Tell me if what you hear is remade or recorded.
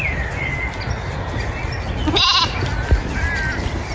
recorded